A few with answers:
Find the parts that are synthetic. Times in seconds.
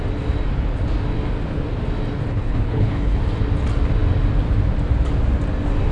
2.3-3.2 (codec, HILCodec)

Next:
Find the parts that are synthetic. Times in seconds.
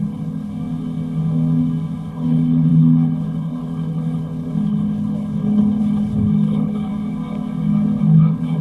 0.0-0.5 (codec, HILCodec); 2.1-6.9; 8.0-8.6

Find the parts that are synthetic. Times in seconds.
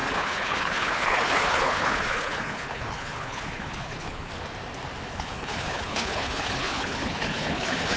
0.0-4.3 (codec, HILCodec); 5.1-8.0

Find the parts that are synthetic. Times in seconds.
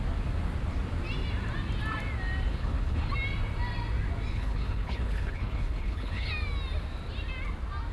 2.5-3.1 (codec, HILCodec); 4.3-6.3